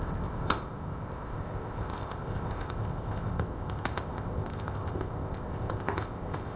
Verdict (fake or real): fake